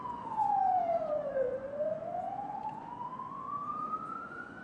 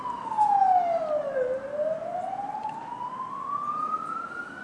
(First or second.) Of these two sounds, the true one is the second